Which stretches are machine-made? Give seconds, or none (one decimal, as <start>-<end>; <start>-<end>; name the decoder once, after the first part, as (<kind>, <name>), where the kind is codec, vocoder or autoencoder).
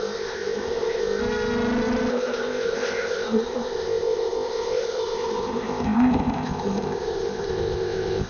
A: 0.0-1.2 (codec, ZipCodec); 2.1-8.3